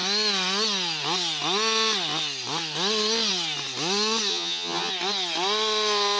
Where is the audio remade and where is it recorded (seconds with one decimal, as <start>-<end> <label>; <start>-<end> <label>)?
0.0-4.3 recorded; 4.3-4.9 remade; 4.9-6.2 recorded